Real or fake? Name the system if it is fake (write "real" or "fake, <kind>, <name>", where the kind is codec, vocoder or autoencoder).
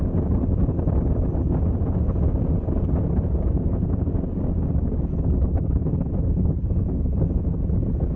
real